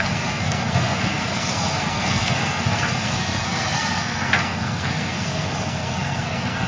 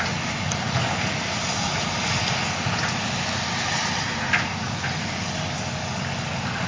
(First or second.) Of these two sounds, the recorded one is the second